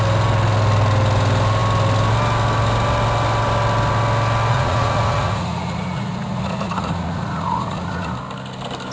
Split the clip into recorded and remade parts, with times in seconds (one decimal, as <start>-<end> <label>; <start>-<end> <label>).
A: 0.0-4.5 recorded; 4.5-8.1 remade; 8.1-8.9 recorded